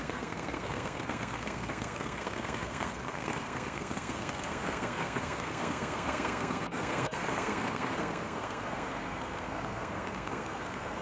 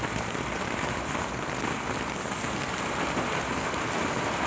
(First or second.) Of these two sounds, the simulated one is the first